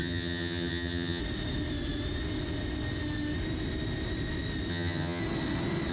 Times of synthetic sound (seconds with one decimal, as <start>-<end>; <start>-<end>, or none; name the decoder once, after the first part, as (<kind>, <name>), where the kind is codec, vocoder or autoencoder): 0.0-1.2 (vocoder, HiFi-GAN); 4.7-5.2